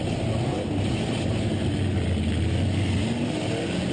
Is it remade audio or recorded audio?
recorded